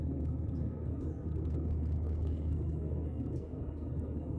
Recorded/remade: remade